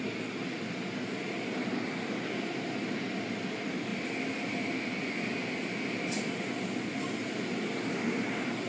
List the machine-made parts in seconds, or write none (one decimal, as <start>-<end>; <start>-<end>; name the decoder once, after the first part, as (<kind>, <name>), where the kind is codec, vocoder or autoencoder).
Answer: none